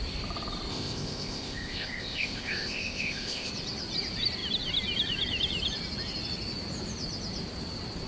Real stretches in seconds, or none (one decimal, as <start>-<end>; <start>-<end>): 0.0-0.7; 3.5-8.1